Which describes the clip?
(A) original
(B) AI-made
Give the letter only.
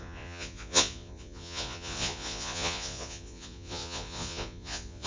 B